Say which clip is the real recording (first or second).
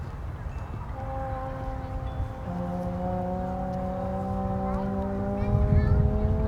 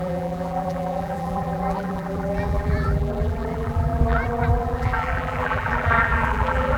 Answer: first